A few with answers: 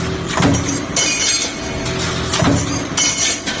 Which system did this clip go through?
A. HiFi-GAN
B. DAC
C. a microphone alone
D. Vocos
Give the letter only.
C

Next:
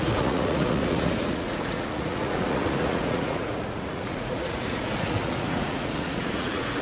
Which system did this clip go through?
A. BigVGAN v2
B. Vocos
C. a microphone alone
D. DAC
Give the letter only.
B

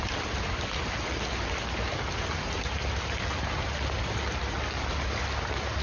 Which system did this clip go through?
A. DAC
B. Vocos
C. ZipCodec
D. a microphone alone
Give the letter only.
D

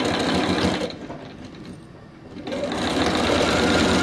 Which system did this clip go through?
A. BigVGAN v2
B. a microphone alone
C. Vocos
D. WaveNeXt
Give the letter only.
B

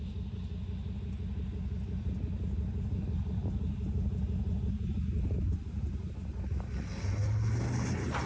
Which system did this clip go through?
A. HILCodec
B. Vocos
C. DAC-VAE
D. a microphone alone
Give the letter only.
D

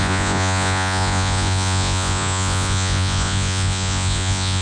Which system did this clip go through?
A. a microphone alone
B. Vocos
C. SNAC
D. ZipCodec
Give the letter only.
B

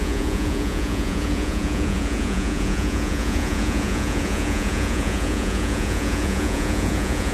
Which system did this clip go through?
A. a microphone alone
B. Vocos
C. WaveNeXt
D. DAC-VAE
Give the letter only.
B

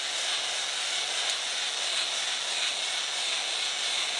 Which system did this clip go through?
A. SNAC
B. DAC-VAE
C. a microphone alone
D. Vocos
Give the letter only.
C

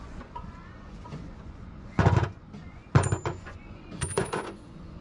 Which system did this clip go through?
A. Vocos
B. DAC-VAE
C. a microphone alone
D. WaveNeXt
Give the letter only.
A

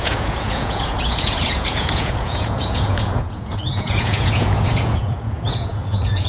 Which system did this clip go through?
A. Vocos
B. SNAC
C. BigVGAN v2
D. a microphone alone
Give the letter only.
A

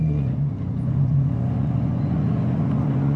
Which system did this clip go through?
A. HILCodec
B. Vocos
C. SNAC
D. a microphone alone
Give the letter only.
B